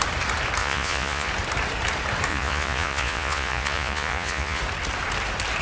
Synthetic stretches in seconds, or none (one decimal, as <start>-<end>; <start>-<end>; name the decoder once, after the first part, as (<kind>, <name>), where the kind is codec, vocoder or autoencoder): 0.6-1.3 (vocoder, Vocos); 2.3-4.6